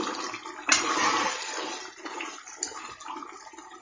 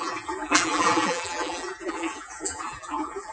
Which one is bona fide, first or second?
first